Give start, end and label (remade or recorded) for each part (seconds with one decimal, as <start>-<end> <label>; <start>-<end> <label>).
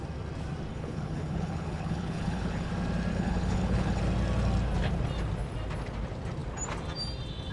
0.0-0.7 recorded; 0.7-2.7 remade; 2.7-3.1 recorded; 3.1-4.0 remade; 4.0-7.5 recorded